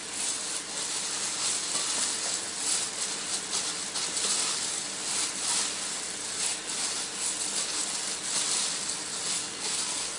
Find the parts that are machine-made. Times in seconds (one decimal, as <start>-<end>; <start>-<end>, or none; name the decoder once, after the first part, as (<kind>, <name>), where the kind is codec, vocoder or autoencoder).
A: 9.4-10.2 (codec, SNAC)